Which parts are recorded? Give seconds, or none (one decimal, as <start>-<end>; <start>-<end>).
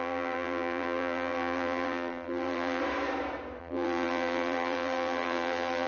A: 2.8-3.6